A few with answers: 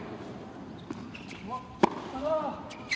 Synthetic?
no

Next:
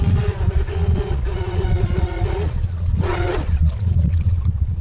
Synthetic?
yes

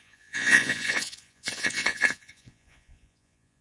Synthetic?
yes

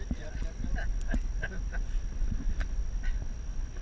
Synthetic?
no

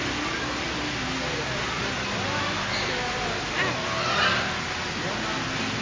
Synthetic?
no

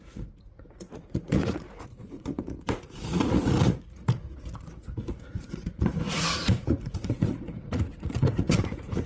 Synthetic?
yes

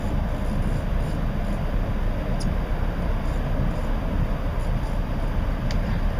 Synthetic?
no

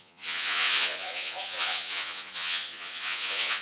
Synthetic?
yes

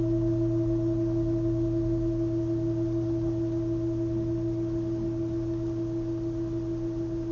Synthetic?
no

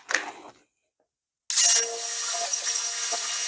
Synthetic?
no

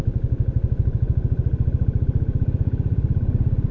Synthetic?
no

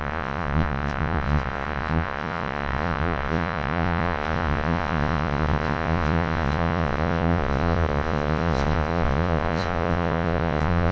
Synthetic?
yes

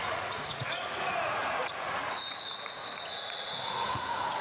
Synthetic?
yes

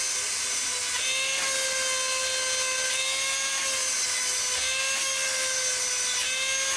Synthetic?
no